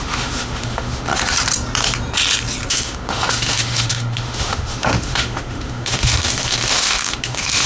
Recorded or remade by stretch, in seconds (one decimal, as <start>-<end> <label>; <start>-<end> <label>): 0.0-1.1 remade; 1.1-2.7 recorded; 2.7-7.7 remade